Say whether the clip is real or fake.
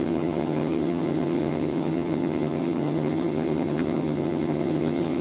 fake